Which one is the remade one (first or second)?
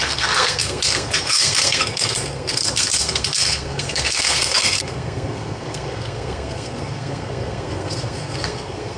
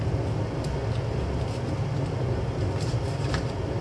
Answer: first